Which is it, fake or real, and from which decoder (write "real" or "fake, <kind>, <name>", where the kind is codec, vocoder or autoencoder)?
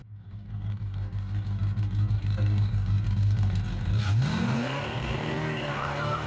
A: fake, codec, DAC